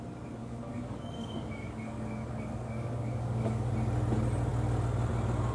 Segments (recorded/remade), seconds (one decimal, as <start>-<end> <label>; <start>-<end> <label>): 0.0-0.4 recorded; 0.4-3.7 remade; 3.7-5.5 recorded